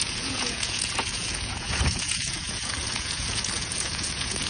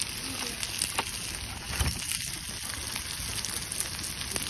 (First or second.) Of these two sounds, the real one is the second